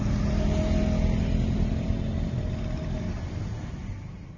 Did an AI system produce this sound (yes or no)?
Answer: no